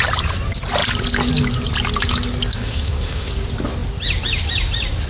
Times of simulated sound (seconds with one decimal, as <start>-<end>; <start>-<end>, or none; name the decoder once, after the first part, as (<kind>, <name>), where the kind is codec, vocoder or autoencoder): 2.5-3.3 (autoencoder, DAC-VAE)